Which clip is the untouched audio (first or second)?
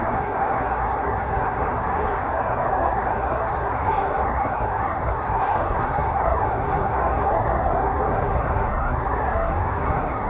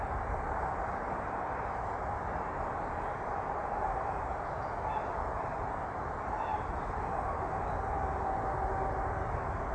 second